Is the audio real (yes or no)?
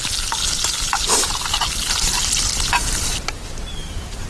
yes